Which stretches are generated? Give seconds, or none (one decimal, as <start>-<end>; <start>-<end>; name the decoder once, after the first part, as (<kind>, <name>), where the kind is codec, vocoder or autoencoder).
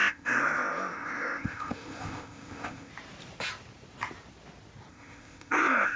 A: 0.0-2.9 (codec, ZipCodec); 4.9-6.0